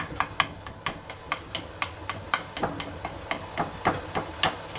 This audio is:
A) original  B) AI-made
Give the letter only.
A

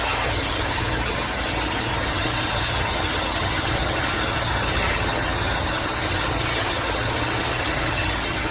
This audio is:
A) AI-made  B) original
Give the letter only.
A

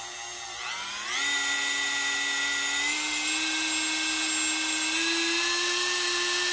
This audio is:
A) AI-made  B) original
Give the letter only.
B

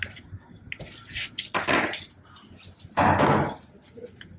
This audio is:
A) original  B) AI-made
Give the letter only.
A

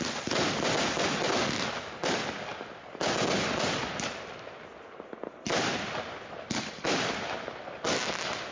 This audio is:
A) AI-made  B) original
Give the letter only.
B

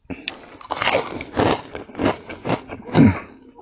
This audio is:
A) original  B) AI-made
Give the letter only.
A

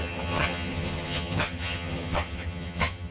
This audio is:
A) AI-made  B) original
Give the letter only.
A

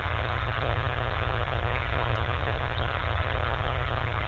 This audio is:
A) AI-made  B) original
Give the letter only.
A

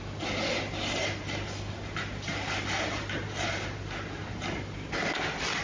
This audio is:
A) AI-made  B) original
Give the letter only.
B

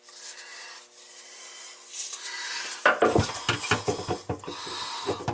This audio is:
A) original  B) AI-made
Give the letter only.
A